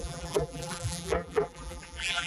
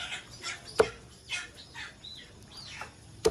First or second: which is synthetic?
first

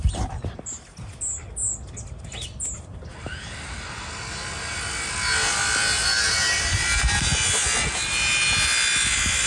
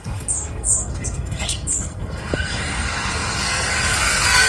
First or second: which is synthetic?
second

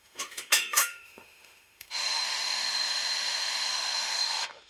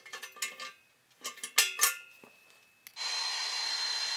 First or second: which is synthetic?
first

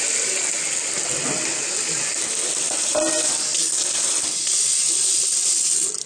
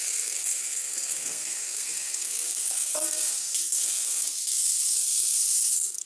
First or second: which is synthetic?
second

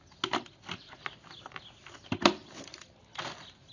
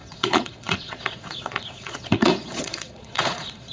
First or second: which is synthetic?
second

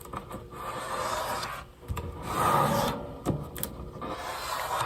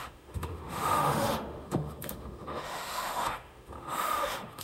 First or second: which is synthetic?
second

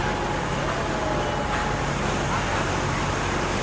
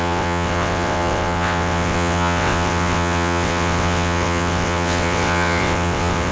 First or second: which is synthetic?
second